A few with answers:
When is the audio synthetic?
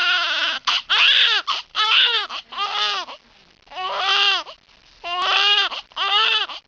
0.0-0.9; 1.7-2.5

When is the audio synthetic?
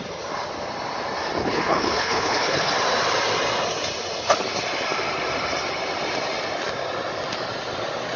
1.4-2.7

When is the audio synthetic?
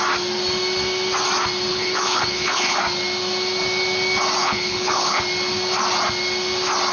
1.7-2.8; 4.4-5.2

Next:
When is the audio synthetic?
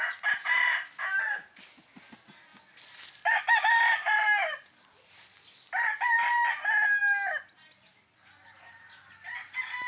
none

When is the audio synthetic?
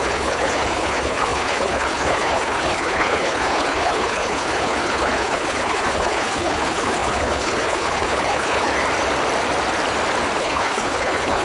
0.0-8.7; 10.4-11.4